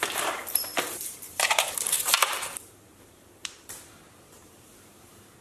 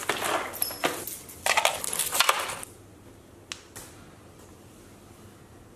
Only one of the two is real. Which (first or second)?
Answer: second